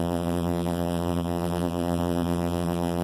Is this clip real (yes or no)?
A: no